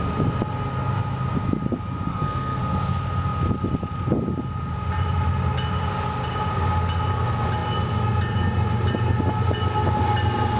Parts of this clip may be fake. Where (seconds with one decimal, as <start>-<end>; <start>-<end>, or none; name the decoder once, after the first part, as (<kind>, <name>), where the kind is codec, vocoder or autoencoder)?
2.1-2.6 (codec, SNAC)